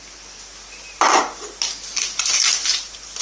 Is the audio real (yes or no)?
yes